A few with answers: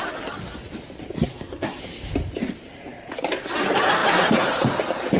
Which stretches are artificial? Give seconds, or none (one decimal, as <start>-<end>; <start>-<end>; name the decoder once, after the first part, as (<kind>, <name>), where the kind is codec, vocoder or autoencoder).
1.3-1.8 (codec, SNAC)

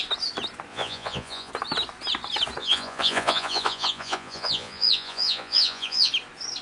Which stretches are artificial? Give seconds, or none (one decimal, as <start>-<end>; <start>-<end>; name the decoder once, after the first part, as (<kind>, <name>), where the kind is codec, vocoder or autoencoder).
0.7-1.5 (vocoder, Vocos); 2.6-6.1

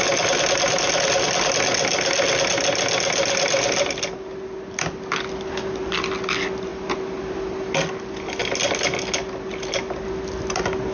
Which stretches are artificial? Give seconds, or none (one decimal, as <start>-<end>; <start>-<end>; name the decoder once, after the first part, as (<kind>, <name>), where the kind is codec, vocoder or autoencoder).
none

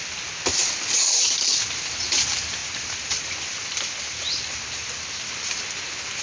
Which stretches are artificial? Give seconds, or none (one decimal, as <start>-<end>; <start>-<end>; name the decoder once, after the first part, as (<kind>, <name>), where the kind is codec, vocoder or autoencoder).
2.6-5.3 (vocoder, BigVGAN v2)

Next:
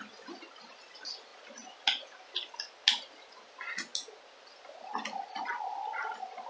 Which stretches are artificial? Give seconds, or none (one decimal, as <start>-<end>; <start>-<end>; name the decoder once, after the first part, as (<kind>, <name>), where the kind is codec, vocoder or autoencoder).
none

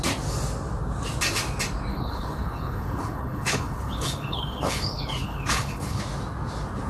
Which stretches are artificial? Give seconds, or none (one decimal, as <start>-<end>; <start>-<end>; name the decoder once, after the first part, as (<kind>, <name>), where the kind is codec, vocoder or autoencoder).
1.9-6.0 (codec, HILCodec)

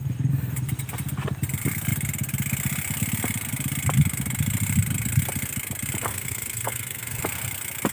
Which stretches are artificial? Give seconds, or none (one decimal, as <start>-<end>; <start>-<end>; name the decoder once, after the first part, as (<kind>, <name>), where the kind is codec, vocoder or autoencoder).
6.1-7.2 (codec, SNAC)